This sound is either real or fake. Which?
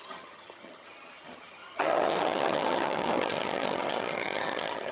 fake